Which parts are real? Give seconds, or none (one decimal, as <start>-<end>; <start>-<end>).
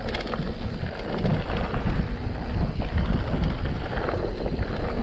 0.0-5.0